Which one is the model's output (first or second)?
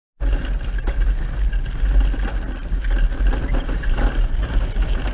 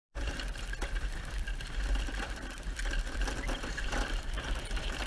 second